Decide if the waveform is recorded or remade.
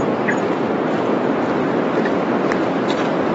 recorded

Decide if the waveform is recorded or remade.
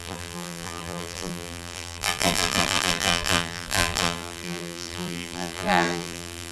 remade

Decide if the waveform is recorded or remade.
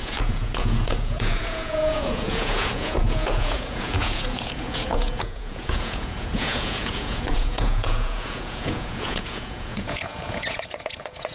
remade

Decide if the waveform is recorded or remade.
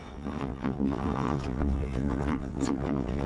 remade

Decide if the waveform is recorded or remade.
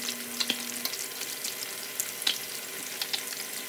recorded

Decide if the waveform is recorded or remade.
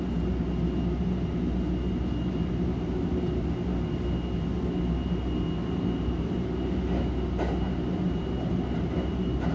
recorded